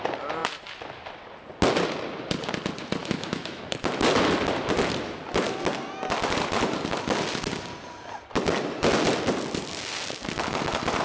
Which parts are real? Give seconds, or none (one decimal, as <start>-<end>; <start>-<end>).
0.0-3.0; 3.6-11.0